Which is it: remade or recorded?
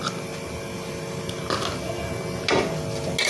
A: recorded